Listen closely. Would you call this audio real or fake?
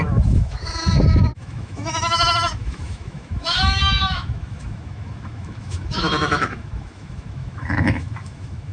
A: fake